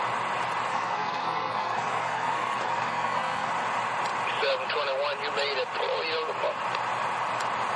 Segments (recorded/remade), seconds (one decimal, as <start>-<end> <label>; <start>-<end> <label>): 0.0-0.7 recorded; 0.7-3.5 remade; 3.5-7.8 recorded